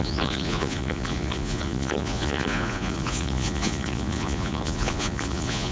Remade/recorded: remade